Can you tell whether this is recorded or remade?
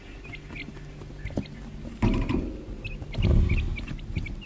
recorded